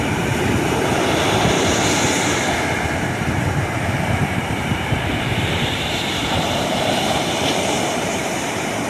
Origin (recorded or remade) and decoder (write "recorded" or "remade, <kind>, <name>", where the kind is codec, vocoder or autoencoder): remade, vocoder, BigVGAN v2